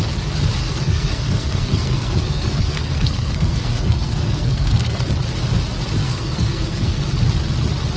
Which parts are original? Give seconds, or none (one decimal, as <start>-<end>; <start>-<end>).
0.0-0.6; 5.0-6.0; 7.0-8.0